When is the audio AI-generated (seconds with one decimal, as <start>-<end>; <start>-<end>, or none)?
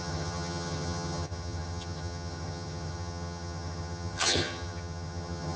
0.0-5.6